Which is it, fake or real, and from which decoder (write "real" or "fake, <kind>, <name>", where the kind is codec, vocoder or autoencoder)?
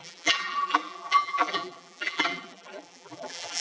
fake, vocoder, BigVGAN v2